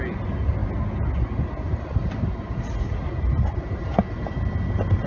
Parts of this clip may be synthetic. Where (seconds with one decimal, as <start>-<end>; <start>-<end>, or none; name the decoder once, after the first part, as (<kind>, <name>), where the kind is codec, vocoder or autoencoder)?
none